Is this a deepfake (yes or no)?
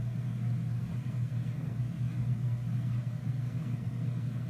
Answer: yes